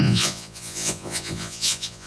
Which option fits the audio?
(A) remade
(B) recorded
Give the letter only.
A